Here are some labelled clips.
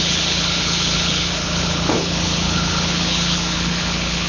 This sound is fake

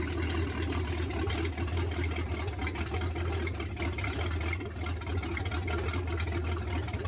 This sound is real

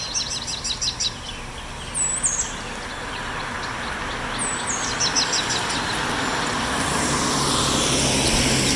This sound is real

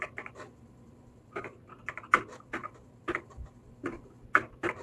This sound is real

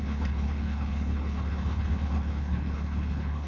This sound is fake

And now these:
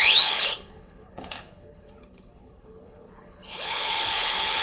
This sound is fake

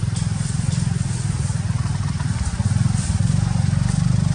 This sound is real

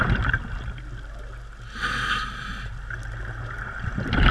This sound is real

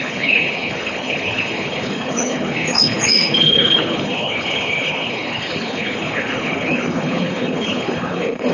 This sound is fake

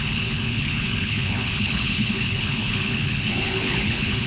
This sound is fake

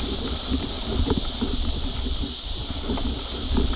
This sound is real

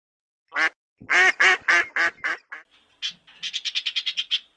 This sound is real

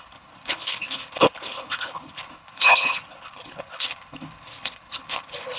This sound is fake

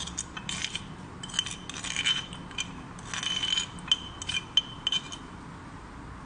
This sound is real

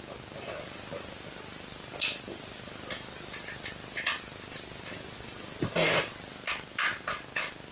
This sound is real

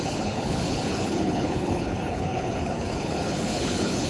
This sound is fake